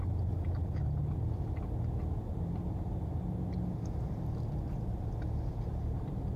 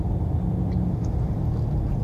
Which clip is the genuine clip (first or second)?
second